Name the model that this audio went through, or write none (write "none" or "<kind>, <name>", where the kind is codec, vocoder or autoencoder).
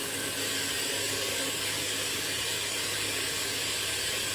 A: codec, DAC